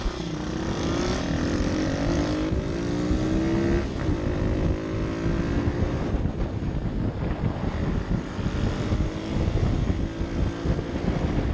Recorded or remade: recorded